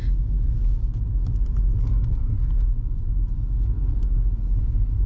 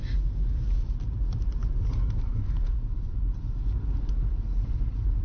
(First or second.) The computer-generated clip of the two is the second